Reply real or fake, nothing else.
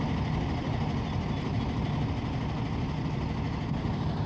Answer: real